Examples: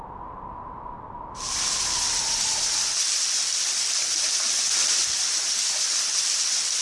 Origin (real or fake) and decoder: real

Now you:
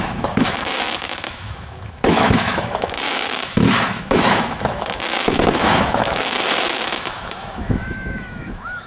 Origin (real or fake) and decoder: fake, autoencoder, DAC-VAE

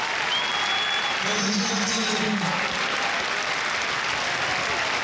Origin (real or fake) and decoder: real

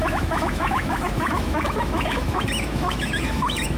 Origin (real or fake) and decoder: fake, autoencoder, DAC-VAE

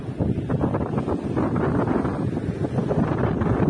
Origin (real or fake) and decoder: real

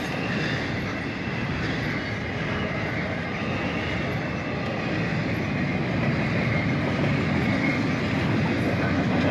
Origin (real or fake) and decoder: real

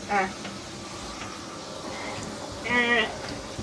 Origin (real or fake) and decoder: real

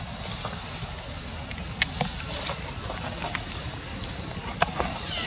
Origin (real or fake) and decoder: real